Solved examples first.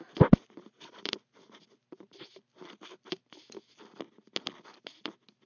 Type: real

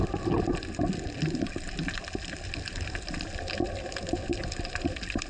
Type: real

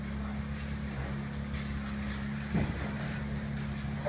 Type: real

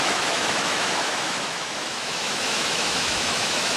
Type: fake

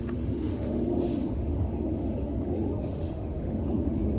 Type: fake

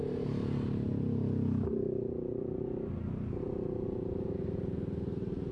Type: real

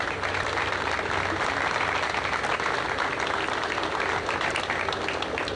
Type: real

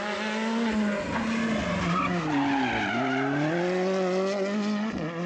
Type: real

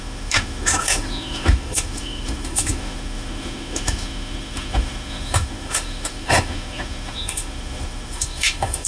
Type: fake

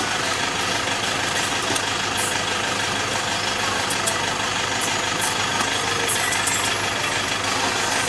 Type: real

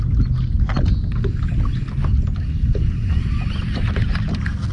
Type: real